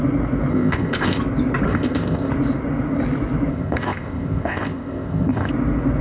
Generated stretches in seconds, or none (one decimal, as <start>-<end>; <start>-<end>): 0.5-1.2; 1.7-2.3; 3.5-5.5